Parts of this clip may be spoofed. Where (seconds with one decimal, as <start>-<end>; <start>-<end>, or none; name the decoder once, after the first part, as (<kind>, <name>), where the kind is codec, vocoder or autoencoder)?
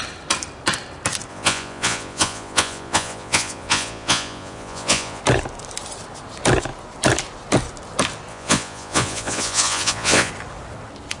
1.3-5.2 (vocoder, Vocos); 8.3-10.3